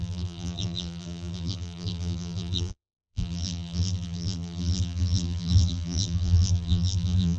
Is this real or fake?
fake